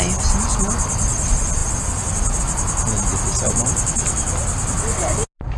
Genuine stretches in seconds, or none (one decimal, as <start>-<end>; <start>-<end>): 0.0-5.6